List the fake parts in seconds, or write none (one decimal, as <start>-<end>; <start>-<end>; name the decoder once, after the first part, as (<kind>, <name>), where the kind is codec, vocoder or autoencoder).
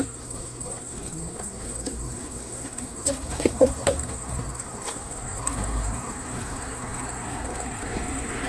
0.0-8.5 (codec, SNAC)